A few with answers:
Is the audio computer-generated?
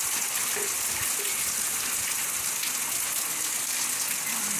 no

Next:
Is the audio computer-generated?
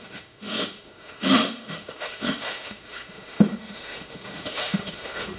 yes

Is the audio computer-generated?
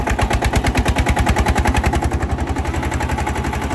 no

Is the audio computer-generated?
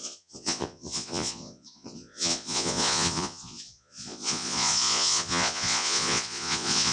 yes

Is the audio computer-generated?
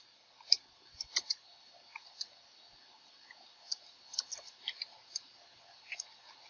no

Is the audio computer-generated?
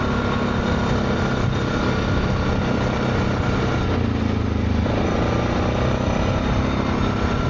no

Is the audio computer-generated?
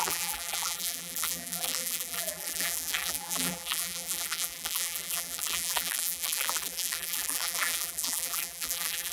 yes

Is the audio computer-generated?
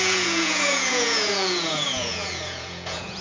yes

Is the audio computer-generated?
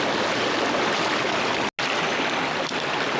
no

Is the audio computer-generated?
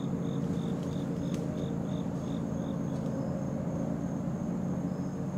no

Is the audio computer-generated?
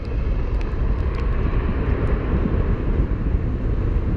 no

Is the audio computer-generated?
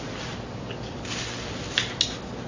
no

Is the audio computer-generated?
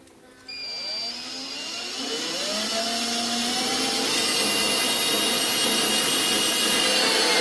no